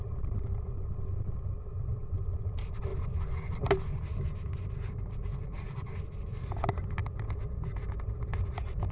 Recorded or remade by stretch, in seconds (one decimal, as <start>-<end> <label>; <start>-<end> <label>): 0.0-8.9 recorded

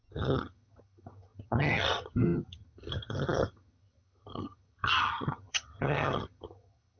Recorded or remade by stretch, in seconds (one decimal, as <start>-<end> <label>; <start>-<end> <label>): 0.0-7.0 remade